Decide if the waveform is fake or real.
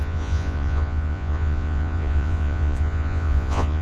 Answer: fake